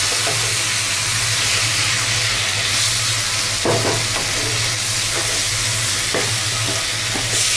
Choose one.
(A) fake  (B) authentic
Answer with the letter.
B